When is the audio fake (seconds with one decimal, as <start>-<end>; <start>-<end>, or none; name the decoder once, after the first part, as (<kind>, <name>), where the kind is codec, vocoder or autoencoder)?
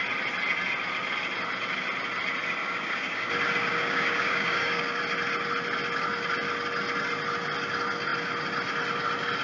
2.6-3.3 (codec, DAC); 3.7-5.0